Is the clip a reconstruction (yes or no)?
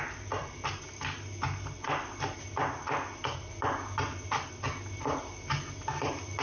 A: no